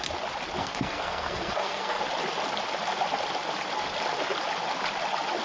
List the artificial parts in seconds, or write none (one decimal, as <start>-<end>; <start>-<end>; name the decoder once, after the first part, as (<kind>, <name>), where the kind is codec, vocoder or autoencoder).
0.6-2.0 (codec, SNAC)